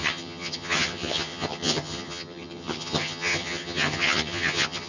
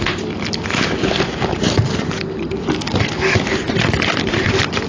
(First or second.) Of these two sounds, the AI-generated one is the first